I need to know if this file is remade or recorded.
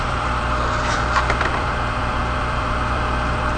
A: remade